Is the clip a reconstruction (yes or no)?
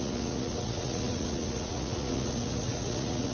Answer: yes